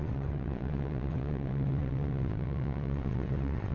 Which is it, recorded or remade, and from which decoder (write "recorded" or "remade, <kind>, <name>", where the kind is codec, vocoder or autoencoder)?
remade, vocoder, WaveNeXt